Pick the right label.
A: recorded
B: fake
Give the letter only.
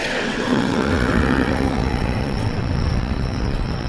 B